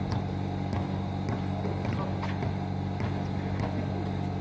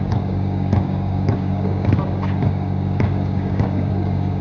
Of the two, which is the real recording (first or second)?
first